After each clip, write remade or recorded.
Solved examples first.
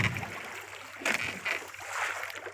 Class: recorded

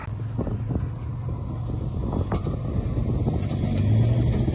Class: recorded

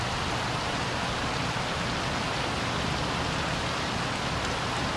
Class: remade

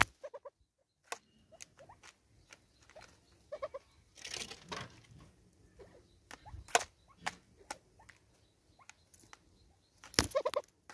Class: recorded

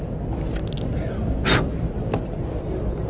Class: recorded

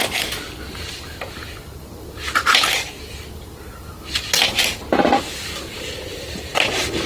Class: recorded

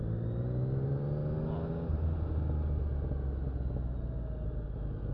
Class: recorded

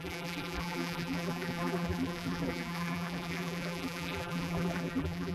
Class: remade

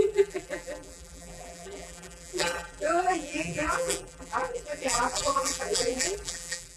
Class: remade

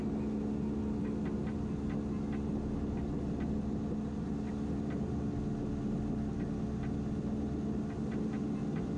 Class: recorded